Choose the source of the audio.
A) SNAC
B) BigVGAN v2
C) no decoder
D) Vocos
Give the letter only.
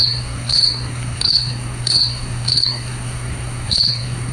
A